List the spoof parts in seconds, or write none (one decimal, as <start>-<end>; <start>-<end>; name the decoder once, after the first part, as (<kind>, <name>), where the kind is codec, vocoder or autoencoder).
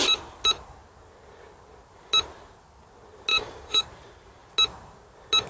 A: 3.3-3.8 (codec, DAC)